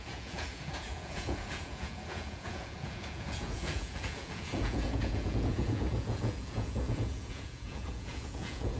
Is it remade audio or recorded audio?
remade